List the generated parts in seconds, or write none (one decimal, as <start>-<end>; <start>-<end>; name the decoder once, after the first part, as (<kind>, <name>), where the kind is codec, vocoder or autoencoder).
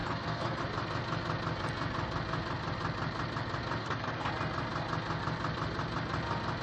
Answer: 0.0-0.6 (codec, SNAC); 3.8-4.3